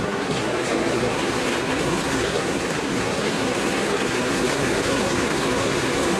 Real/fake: fake